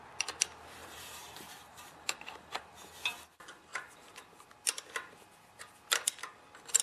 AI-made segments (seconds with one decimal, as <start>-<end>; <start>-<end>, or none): 0.8-2.6; 3.7-4.5